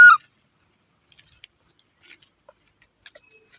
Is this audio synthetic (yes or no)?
no